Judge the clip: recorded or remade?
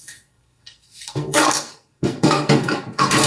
remade